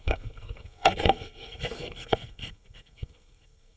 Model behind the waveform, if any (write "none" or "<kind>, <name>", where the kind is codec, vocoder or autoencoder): codec, SNAC